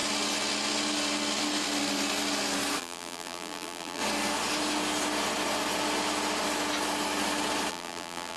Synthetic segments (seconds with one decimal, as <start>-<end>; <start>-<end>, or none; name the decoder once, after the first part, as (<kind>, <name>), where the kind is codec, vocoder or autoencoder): 2.8-4.0 (vocoder, BigVGAN v2); 7.7-8.4